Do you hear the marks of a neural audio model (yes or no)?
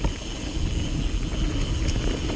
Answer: no